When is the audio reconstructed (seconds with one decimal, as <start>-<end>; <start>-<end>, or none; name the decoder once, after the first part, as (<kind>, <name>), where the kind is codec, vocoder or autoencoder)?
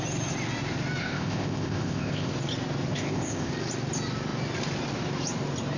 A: 1.0-2.3 (codec, ZipCodec); 2.9-3.5